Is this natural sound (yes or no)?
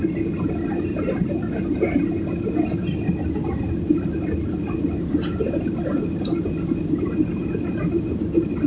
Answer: yes